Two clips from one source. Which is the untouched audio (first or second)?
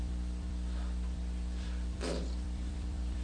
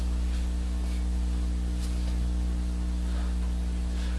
second